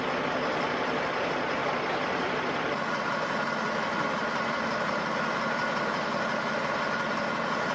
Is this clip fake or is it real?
real